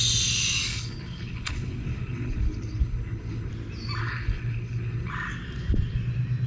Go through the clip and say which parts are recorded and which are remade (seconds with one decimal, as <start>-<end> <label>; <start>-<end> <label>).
0.0-0.7 recorded; 0.7-3.5 remade; 3.5-4.0 recorded; 4.0-5.1 remade; 5.1-6.5 recorded